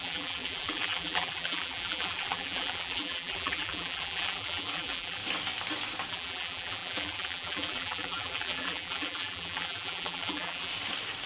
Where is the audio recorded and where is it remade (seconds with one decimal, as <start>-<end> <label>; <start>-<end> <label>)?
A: 0.0-5.2 remade; 5.2-6.1 recorded; 6.1-10.7 remade; 10.7-11.3 recorded